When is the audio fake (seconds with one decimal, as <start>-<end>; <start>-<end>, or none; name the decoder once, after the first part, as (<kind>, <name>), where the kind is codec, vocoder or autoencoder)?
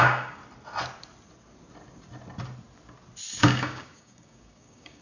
0.0-0.4 (codec, DAC); 3.4-5.0